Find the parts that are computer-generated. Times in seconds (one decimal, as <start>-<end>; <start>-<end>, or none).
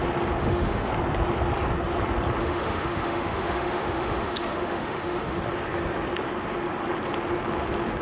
0.4-0.9; 2.4-5.4